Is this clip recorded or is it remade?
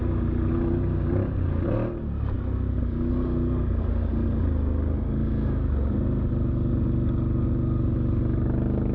recorded